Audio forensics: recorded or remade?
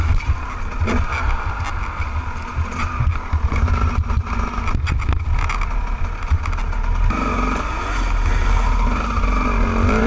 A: recorded